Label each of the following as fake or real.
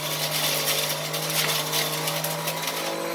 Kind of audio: real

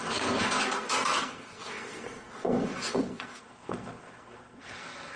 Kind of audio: fake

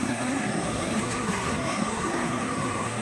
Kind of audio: fake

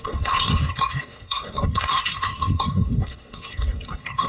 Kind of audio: fake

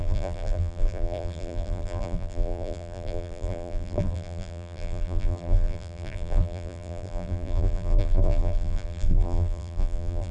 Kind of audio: fake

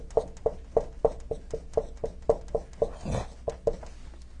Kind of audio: real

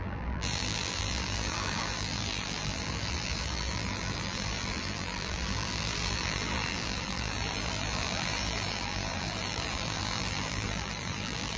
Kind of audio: fake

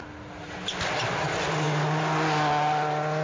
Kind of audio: real